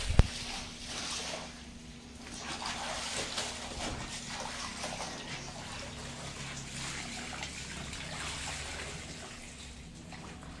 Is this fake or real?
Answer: real